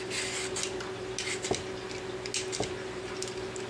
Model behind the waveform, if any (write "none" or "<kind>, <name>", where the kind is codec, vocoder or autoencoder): none